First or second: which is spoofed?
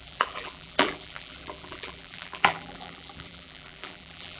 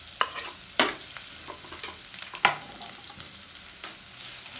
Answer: first